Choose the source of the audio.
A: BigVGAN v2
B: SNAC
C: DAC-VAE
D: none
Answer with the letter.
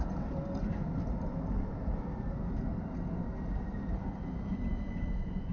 D